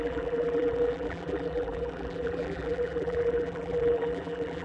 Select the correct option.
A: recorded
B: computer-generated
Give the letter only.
B